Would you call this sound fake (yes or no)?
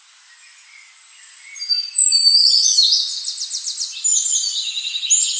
no